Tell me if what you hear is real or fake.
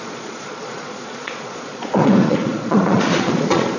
fake